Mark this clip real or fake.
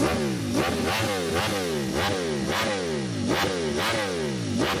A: real